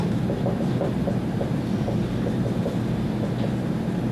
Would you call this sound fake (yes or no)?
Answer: no